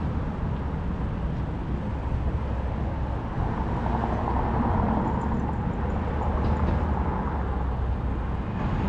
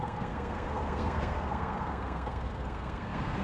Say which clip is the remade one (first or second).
second